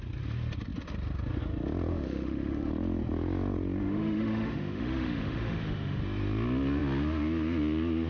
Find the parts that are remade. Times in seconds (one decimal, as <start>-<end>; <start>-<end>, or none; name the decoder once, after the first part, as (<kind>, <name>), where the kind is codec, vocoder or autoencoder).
1.9-2.7 (autoencoder, DAC-VAE); 3.8-6.0